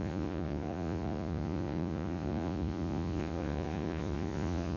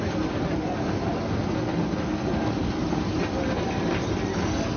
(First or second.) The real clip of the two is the second